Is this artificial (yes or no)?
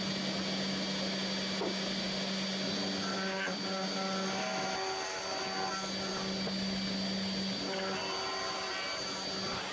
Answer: no